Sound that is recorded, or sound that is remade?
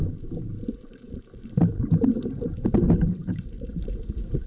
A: remade